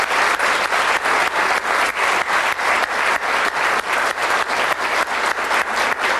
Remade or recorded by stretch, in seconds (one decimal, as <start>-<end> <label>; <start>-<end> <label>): 0.0-1.9 recorded; 1.9-5.1 remade; 5.1-6.2 recorded